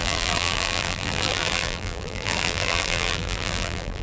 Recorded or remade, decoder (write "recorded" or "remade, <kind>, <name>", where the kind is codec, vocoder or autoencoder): remade, vocoder, BigVGAN v2